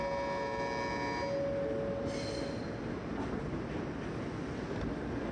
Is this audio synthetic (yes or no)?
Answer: no